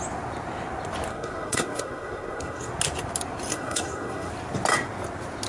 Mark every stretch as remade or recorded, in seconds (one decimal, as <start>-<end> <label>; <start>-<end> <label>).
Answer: 0.0-1.1 recorded; 1.1-2.7 remade; 2.7-3.5 recorded; 3.5-4.3 remade; 4.3-5.5 recorded